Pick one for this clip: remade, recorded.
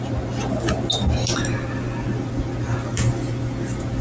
recorded